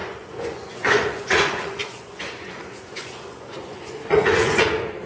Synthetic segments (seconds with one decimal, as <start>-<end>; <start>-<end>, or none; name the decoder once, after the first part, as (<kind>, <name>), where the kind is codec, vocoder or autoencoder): 0.0-5.1 (vocoder, Vocos)